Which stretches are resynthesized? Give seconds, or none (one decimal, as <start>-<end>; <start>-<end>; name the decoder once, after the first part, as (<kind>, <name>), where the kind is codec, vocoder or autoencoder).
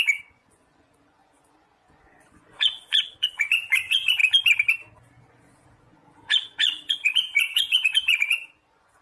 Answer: 0.0-4.2 (vocoder, Vocos); 5.3-9.0